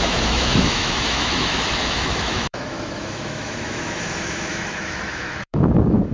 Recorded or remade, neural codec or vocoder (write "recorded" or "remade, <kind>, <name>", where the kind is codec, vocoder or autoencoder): remade, autoencoder, DAC-VAE